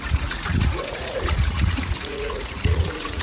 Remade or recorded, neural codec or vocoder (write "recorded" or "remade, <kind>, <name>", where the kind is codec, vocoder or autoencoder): remade, vocoder, Vocos